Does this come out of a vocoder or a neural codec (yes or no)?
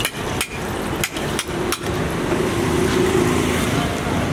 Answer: no